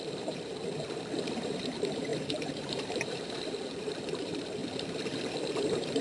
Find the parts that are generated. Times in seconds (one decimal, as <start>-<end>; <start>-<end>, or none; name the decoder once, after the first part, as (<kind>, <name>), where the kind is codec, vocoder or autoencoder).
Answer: 0.0-0.5 (vocoder, BigVGAN v2); 1.2-4.6; 5.2-6.0